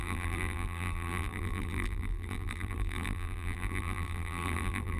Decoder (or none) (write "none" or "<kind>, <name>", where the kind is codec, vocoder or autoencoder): vocoder, BigVGAN v2